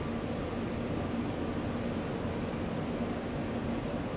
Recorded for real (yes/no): yes